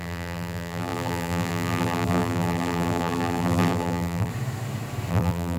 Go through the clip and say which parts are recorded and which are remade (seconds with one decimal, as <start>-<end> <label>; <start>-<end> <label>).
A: 0.0-4.3 remade; 4.3-5.1 recorded; 5.1-5.6 remade